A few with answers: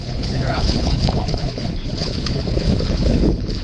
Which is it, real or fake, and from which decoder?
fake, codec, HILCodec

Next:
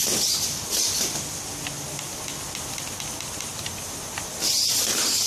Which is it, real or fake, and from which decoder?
real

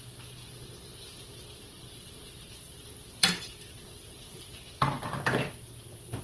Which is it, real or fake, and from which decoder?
fake, vocoder, BigVGAN v2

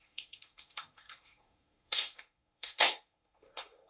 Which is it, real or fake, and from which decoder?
fake, codec, SNAC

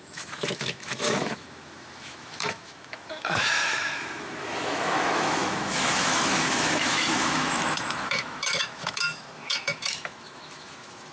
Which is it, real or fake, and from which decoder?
fake, autoencoder, DAC-VAE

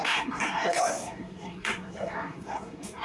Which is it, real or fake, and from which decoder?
fake, codec, SNAC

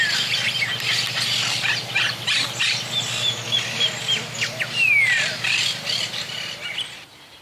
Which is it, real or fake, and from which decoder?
real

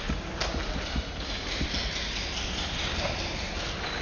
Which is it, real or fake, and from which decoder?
real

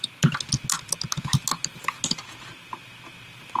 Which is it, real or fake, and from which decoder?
real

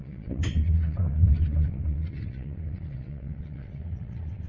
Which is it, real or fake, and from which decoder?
fake, vocoder, WaveNeXt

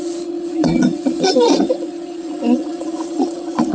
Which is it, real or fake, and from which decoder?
fake, vocoder, Vocos